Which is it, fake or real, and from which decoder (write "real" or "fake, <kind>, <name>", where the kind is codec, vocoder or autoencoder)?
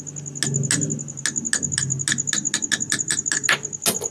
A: real